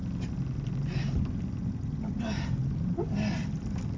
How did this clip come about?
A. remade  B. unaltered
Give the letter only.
B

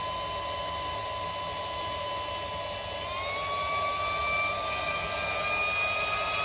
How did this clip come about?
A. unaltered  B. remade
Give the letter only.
A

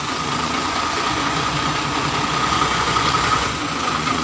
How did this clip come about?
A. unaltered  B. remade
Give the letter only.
B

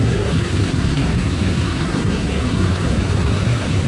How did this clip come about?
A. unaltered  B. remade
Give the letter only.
B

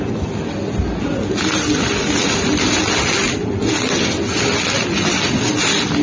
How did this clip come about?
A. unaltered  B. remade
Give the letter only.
A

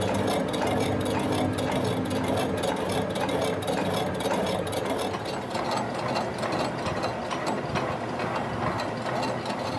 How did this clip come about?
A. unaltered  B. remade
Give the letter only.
A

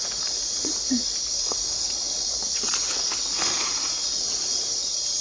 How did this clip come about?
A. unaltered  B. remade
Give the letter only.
B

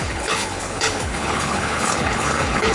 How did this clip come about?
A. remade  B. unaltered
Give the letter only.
A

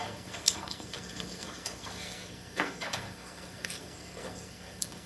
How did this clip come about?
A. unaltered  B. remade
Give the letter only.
B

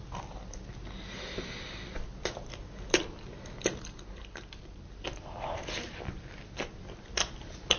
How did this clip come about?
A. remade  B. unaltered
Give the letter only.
B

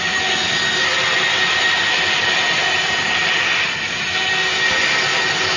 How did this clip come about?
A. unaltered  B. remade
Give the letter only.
A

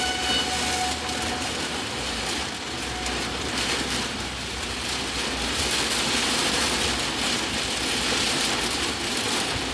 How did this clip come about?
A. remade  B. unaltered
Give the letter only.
B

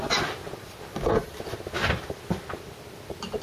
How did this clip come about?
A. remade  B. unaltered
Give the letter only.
B